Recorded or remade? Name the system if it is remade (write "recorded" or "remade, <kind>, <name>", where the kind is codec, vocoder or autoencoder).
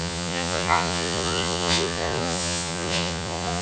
remade, vocoder, Vocos